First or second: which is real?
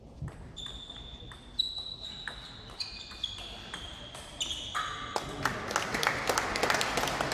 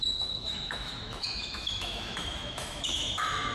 first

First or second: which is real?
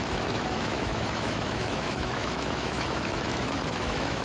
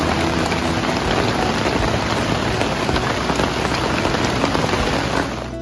second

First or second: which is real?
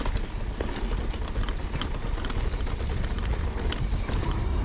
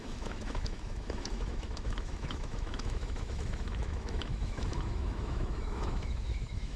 first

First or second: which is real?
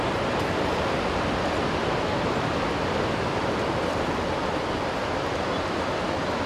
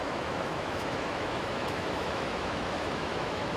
first